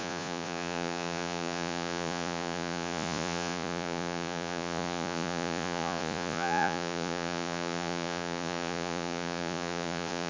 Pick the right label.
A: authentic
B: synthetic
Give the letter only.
B